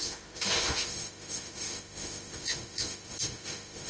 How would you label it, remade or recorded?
remade